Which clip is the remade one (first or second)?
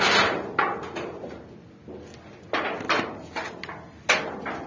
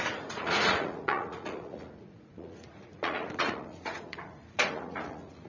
second